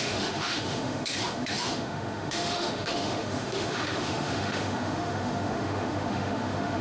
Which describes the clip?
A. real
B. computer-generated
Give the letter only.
B